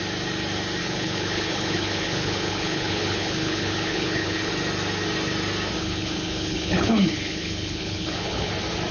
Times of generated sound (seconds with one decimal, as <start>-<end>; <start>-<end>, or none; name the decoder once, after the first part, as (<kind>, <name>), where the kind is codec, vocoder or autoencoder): 0.8-4.5 (codec, HILCodec); 5.8-8.5